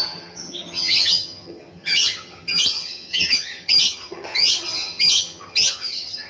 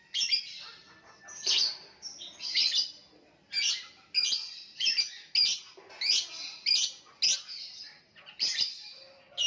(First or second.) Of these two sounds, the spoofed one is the first